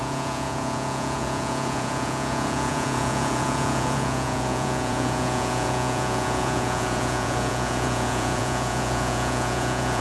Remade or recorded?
remade